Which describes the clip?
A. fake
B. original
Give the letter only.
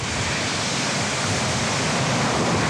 B